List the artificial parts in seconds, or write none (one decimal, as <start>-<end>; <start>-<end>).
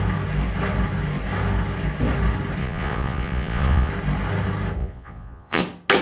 2.6-3.9; 4.8-5.6